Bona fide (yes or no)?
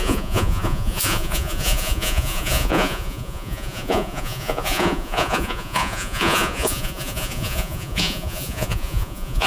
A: no